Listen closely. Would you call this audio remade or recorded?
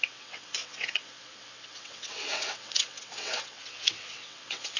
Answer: remade